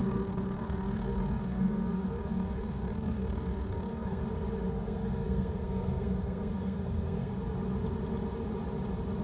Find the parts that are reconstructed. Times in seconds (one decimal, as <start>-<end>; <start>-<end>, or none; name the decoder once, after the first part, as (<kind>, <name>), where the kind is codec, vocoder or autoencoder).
0.0-4.2 (codec, SNAC); 4.7-7.3